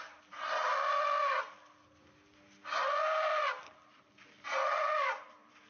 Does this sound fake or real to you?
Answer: real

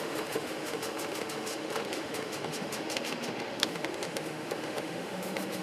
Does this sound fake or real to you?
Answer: fake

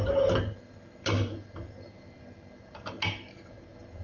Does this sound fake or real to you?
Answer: real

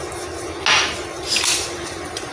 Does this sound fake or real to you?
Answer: real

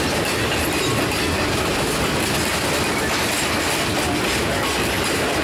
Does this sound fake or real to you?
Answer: real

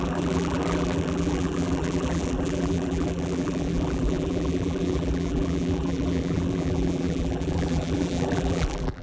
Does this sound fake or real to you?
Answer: fake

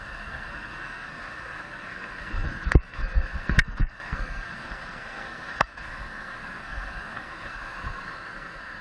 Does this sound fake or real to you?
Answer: fake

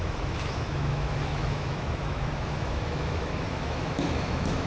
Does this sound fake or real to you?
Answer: fake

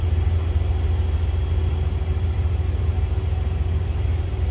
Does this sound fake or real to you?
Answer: real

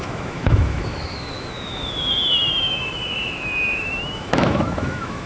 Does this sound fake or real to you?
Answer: fake